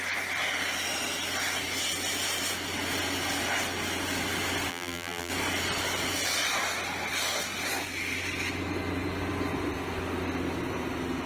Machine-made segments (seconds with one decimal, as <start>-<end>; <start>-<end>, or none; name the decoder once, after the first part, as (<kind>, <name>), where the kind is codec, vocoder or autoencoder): 4.7-5.3 (vocoder, BigVGAN v2)